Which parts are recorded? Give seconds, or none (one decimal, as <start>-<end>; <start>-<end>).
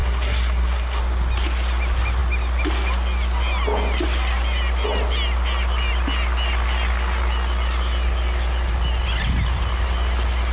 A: 1.0-10.5